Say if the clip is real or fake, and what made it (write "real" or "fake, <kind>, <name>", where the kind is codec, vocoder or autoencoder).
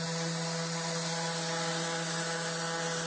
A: real